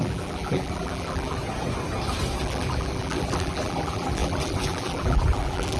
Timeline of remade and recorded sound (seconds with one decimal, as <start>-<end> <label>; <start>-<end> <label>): 0.0-1.4 remade; 1.4-2.4 recorded; 2.4-5.8 remade